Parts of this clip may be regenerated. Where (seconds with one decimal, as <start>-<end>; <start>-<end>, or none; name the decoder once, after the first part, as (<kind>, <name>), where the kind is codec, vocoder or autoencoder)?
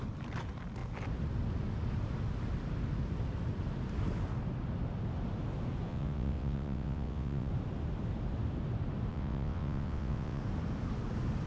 5.9-7.5 (vocoder, WaveNeXt); 9.1-10.4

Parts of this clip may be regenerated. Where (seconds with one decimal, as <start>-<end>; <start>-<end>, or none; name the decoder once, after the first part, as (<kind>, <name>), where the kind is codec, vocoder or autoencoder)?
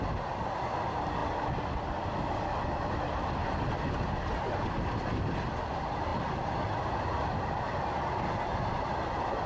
none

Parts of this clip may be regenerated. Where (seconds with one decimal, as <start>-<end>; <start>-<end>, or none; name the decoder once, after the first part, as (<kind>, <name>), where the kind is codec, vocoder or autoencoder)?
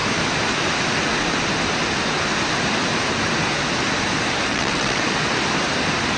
4.5-5.0 (vocoder, WaveNeXt)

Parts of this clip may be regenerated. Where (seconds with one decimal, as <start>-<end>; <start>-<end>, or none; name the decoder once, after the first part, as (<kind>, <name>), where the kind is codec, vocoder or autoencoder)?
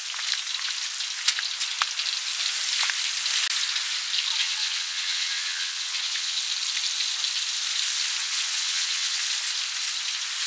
4.4-6.4 (vocoder, WaveNeXt); 8.2-9.2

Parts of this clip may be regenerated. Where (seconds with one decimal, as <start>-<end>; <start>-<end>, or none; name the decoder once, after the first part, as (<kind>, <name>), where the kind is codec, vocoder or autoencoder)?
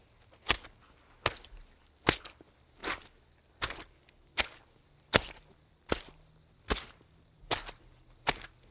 none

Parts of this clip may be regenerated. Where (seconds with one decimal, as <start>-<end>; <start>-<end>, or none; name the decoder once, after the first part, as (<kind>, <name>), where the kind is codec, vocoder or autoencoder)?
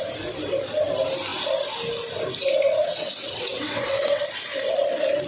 2.8-4.2 (vocoder, WaveNeXt)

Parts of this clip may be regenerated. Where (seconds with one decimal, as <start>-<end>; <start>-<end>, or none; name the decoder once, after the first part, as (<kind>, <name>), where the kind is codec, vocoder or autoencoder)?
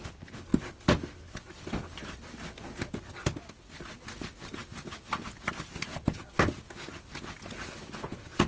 none